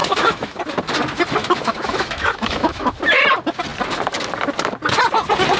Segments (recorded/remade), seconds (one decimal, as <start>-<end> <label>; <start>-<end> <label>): 0.0-0.6 remade; 0.6-1.4 recorded; 1.4-3.0 remade; 3.0-5.6 recorded

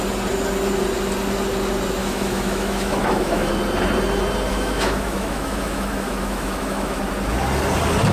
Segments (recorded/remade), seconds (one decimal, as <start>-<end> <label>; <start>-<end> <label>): 0.0-2.0 recorded; 2.0-3.5 remade; 3.5-4.5 recorded; 4.5-7.0 remade; 7.0-8.1 recorded

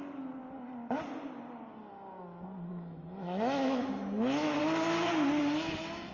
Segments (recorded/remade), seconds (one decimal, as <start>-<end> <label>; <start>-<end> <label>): 0.0-2.7 recorded; 2.7-4.6 remade; 4.6-6.1 recorded

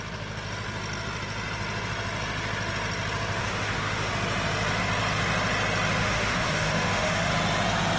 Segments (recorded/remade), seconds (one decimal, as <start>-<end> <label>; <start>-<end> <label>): 0.0-3.4 recorded; 3.4-4.1 remade; 4.1-6.0 recorded; 6.0-7.3 remade; 7.3-8.0 recorded

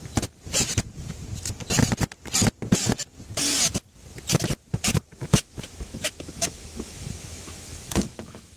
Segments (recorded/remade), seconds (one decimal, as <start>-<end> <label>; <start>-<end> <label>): 0.0-5.2 recorded; 5.2-8.6 remade

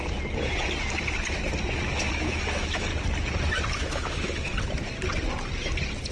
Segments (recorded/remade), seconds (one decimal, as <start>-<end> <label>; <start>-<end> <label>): 0.0-2.1 recorded; 2.1-2.9 remade; 2.9-3.7 recorded; 3.7-4.5 remade; 4.5-6.1 recorded